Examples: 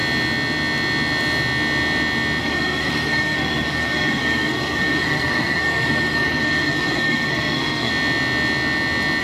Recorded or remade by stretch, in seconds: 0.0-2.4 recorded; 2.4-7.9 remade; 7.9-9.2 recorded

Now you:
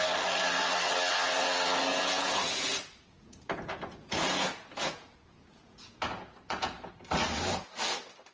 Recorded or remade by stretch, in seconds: 0.0-1.9 recorded; 1.9-6.9 remade; 6.9-8.3 recorded

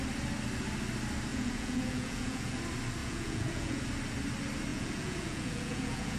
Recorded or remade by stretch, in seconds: 0.0-1.3 recorded; 1.3-2.6 remade; 2.6-3.0 recorded; 3.0-3.8 remade; 3.8-4.7 recorded; 4.7-6.2 remade

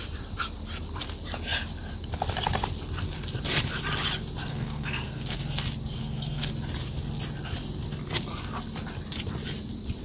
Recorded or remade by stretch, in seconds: 0.0-4.5 recorded; 4.5-5.4 remade; 5.4-6.0 recorded; 6.0-6.5 remade; 6.5-10.0 recorded

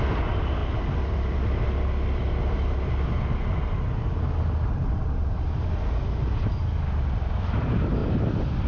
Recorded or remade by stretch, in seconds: 0.0-8.7 recorded

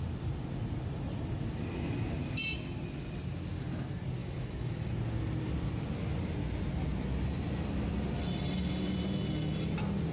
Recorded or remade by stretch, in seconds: 0.0-4.2 recorded; 4.2-4.9 remade; 4.9-10.1 recorded